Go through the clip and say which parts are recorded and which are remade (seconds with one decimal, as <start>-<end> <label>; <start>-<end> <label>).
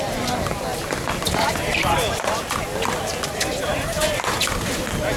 0.0-5.2 recorded